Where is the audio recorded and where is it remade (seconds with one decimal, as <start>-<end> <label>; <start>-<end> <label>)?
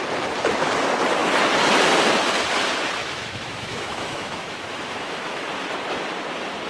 0.0-3.0 recorded; 3.0-5.5 remade; 5.5-6.7 recorded